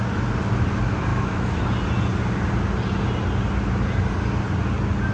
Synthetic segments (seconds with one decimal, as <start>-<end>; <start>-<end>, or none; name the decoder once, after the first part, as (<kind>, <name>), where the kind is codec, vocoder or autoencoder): 1.1-1.6 (autoencoder, DAC-VAE)